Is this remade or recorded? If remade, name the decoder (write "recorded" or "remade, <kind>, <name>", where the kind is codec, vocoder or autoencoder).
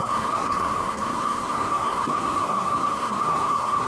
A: remade, codec, SNAC